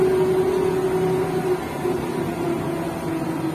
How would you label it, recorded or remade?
recorded